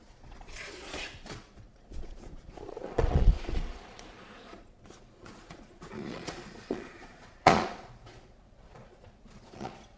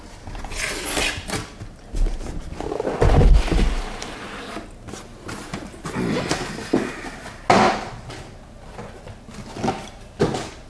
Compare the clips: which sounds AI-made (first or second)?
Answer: first